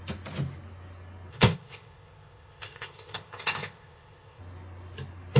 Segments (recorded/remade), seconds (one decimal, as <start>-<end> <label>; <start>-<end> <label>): 0.0-1.3 recorded; 1.3-4.4 remade; 4.4-5.4 recorded